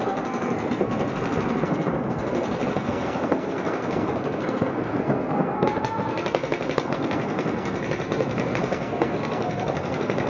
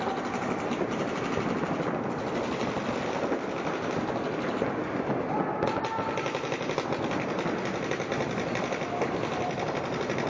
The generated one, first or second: first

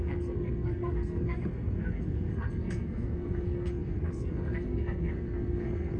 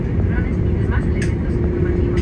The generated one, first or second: first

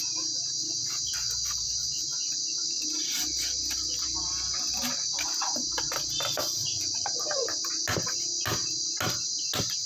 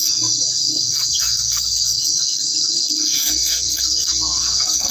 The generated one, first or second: second